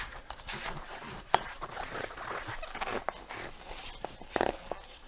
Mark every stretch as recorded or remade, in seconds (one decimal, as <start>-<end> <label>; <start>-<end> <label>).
0.0-1.0 recorded; 1.0-2.5 remade; 2.5-5.1 recorded